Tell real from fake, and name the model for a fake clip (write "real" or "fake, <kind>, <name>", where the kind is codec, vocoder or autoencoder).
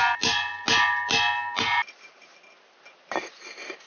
real